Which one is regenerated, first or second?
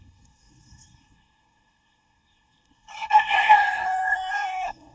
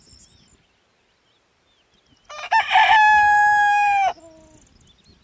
first